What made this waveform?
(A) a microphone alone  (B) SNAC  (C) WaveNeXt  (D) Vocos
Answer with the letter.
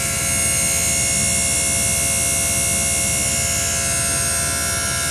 A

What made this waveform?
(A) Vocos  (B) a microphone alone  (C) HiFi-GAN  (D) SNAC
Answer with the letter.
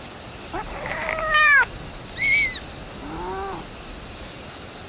B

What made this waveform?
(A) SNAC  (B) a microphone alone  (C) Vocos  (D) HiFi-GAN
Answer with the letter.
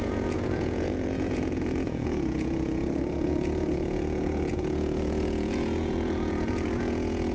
C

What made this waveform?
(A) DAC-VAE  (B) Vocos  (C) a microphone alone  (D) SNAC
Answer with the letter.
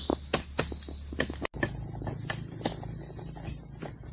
C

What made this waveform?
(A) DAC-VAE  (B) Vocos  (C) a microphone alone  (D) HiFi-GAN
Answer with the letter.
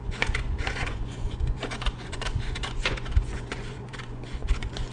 B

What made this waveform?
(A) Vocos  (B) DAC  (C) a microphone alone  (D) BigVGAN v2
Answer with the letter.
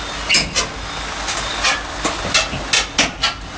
C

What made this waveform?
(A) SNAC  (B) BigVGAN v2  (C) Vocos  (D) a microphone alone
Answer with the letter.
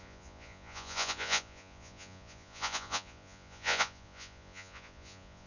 C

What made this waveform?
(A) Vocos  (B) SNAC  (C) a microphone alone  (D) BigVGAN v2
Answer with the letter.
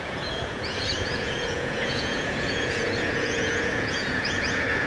A